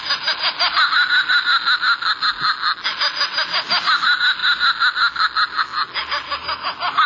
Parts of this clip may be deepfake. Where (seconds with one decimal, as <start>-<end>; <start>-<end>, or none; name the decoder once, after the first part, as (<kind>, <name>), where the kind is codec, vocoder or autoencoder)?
none